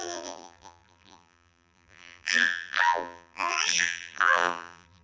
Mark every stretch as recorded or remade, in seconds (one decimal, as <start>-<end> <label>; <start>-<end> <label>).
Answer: 0.0-5.0 remade